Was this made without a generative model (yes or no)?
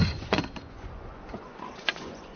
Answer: no